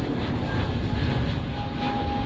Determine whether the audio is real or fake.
real